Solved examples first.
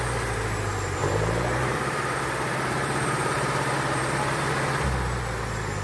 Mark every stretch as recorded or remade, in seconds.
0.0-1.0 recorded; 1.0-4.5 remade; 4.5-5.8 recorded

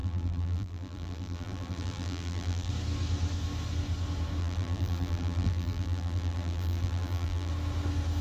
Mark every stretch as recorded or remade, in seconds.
0.0-2.7 remade; 2.7-4.4 recorded; 4.4-7.5 remade; 7.5-8.2 recorded

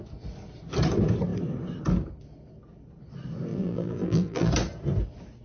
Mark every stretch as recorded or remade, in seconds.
0.0-3.5 recorded; 3.5-4.5 remade; 4.5-5.4 recorded

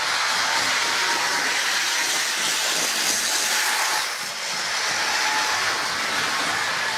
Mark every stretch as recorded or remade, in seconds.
0.0-7.0 recorded